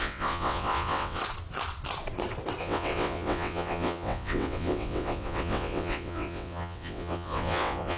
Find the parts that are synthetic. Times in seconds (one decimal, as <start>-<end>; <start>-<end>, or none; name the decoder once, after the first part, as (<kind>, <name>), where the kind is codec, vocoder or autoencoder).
0.0-1.2 (vocoder, WaveNeXt); 2.6-8.0